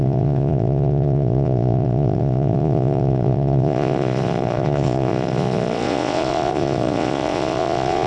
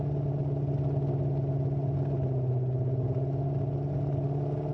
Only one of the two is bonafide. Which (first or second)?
second